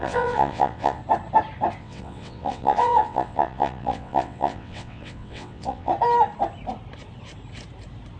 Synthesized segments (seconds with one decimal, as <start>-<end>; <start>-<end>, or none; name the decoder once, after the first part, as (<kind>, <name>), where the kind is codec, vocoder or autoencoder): 0.0-1.0 (vocoder, WaveNeXt); 1.8-5.9

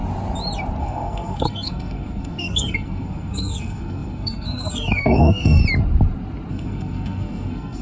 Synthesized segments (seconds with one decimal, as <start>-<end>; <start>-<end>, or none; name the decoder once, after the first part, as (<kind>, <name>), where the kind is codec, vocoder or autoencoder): 0.8-5.6 (codec, SNAC); 6.5-7.8

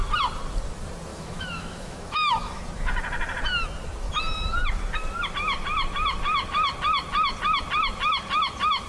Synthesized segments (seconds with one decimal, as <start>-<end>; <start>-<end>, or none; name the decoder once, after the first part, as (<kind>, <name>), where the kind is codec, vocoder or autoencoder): 1.1-2.6 (autoencoder, DAC-VAE)

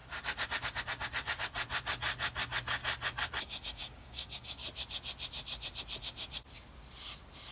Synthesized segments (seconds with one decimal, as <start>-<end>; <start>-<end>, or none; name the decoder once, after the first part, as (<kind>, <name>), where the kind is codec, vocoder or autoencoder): 3.4-4.6 (codec, DAC)

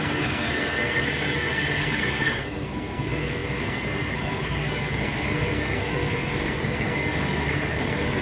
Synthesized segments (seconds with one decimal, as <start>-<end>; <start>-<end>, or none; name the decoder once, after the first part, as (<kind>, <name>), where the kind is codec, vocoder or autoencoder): 0.0-8.2 (codec, SNAC)